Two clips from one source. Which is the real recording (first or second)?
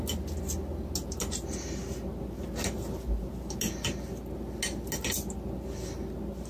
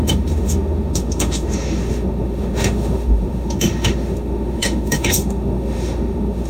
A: first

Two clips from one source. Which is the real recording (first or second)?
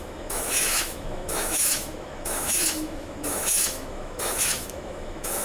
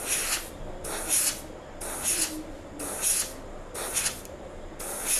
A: second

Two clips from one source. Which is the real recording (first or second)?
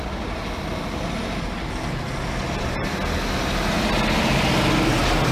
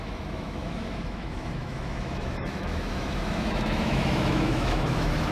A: first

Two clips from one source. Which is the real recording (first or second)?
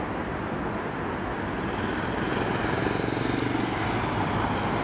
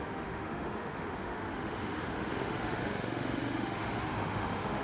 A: first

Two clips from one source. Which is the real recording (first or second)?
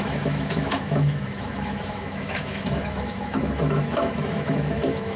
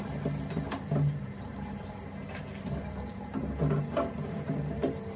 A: second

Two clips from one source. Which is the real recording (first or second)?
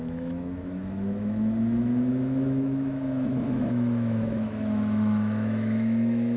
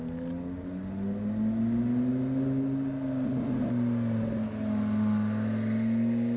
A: second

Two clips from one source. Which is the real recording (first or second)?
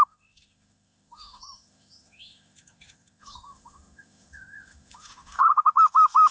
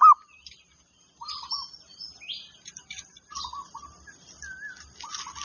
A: second